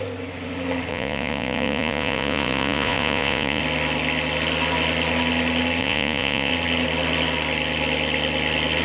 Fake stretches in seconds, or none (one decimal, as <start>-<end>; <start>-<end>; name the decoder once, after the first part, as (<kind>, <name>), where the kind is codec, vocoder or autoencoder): 0.9-3.6 (vocoder, Vocos); 5.8-6.5